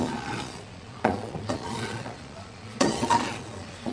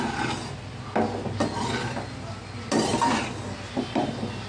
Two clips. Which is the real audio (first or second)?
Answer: second